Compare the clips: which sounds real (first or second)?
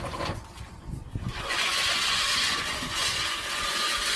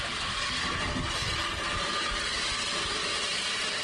second